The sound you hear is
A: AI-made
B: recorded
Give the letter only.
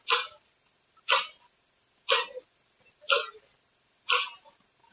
B